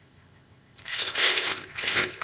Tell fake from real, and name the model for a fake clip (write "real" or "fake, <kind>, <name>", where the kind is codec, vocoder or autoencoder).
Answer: fake, codec, ZipCodec